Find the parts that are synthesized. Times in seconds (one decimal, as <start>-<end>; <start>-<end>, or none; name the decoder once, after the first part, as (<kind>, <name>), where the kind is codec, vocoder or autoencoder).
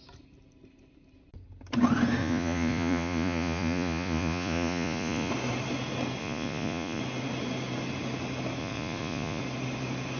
2.2-5.3 (vocoder, Vocos); 6.2-7.0; 8.6-9.4